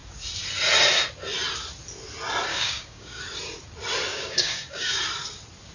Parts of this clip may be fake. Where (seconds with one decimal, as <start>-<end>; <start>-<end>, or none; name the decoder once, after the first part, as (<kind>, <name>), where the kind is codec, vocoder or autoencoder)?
2.5-3.2 (codec, DAC); 4.1-5.0